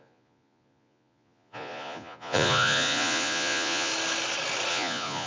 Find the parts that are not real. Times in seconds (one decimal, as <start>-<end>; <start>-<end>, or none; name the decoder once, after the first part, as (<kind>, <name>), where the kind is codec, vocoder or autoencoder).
0.0-3.9 (vocoder, Vocos); 4.7-5.3

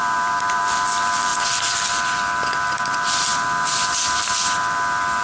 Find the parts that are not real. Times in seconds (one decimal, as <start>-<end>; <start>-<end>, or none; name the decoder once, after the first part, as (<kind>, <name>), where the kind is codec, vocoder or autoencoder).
0.0-5.2 (vocoder, BigVGAN v2)

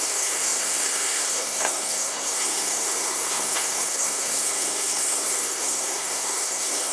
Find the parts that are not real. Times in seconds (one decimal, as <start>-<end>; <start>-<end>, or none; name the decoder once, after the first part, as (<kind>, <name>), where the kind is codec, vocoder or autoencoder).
0.0-6.9 (codec, SNAC)

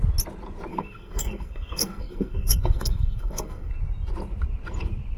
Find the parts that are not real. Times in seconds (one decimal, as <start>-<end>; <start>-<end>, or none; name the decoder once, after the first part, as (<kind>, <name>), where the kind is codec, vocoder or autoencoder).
0.7-3.7 (codec, SNAC)